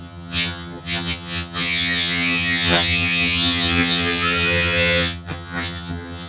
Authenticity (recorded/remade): remade